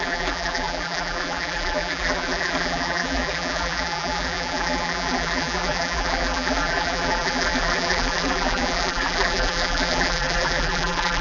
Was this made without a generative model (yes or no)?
no